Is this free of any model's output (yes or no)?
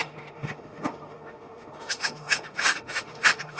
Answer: no